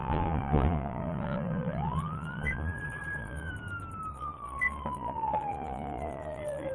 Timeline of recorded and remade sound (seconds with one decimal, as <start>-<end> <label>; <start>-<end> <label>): 0.0-3.5 remade; 3.5-4.1 recorded; 4.1-6.7 remade